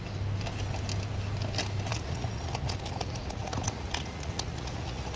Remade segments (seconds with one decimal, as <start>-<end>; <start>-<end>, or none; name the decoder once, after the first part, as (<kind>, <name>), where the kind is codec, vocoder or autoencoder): 1.9-5.2 (vocoder, Vocos)